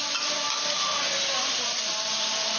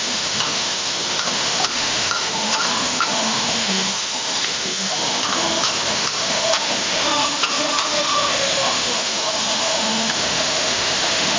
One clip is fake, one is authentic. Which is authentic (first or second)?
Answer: first